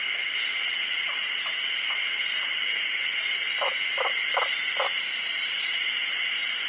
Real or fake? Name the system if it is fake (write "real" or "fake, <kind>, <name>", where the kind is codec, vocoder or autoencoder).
real